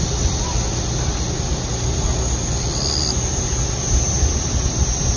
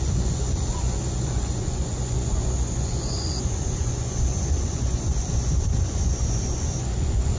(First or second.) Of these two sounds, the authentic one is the first